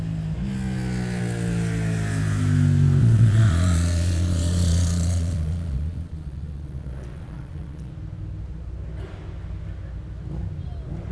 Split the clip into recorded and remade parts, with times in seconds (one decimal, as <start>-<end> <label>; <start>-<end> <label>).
0.0-3.0 recorded; 3.0-7.9 remade; 7.9-11.1 recorded